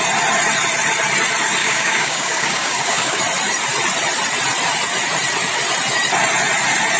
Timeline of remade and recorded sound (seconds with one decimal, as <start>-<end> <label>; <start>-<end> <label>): 0.0-1.6 recorded; 1.6-3.2 remade; 3.2-7.0 recorded